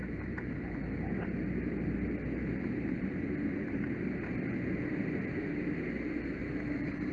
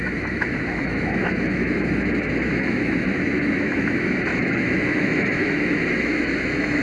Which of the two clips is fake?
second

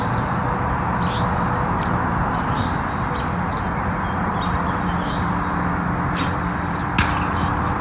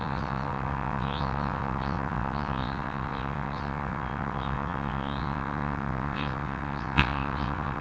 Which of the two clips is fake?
second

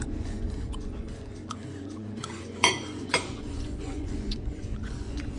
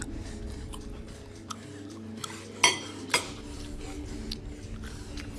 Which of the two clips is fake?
first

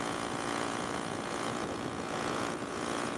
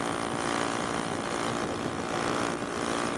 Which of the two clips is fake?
first